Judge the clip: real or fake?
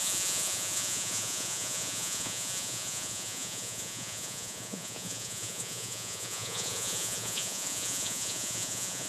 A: fake